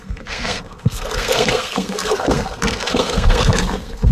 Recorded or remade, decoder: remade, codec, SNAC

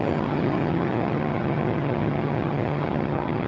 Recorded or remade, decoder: remade, vocoder, HiFi-GAN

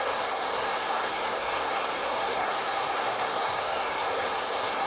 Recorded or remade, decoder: remade, codec, SNAC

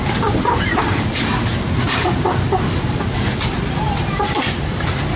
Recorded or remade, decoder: remade, vocoder, BigVGAN v2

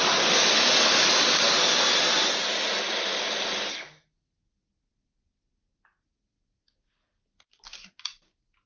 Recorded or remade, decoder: recorded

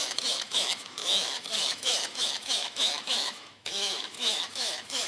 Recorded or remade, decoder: remade, autoencoder, DAC-VAE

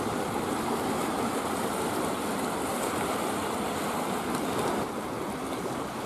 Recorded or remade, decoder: recorded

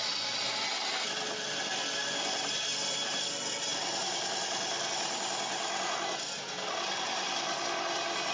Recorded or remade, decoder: recorded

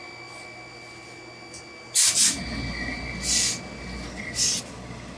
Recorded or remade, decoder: recorded